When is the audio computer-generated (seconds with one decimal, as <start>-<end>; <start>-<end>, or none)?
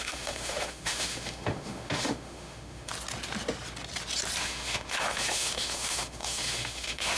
0.0-2.9; 4.4-7.2